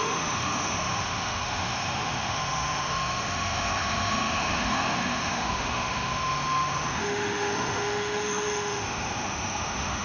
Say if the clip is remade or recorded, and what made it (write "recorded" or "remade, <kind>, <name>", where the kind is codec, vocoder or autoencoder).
remade, autoencoder, DAC-VAE